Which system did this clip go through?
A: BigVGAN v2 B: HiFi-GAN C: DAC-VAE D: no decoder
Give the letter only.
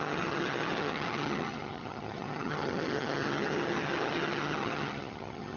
B